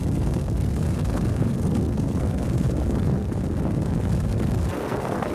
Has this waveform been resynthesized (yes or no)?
yes